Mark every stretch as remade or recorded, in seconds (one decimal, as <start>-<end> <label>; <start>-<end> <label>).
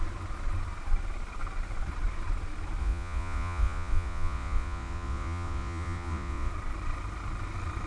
0.0-2.8 recorded; 2.8-6.5 remade; 6.5-7.9 recorded